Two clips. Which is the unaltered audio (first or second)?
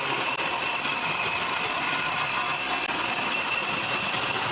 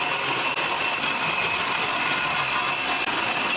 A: second